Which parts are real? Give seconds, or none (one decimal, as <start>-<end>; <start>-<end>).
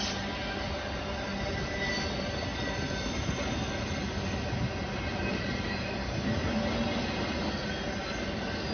0.0-8.7